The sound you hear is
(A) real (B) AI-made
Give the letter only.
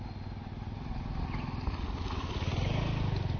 A